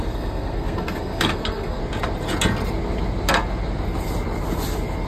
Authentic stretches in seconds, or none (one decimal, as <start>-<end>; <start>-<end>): 1.8-5.1